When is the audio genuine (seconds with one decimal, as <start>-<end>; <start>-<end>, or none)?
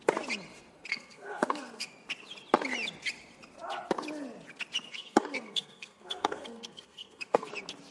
0.0-0.9; 1.9-4.9; 7.5-7.9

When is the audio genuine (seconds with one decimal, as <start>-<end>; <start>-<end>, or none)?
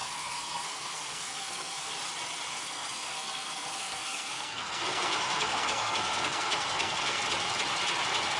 1.9-2.5; 7.2-8.4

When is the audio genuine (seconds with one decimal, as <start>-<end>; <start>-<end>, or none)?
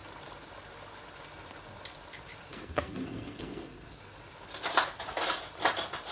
0.0-2.5; 4.0-6.1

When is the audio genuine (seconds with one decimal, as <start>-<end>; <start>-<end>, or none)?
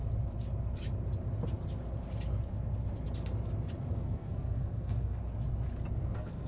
0.0-3.9; 5.2-5.9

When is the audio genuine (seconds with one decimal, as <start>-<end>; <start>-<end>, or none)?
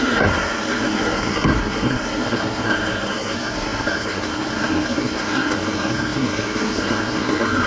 none